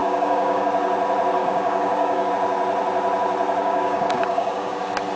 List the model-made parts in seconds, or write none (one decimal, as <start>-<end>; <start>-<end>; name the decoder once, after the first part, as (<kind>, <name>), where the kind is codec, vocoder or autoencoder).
0.0-0.7 (codec, DAC); 1.4-2.3; 3.6-4.8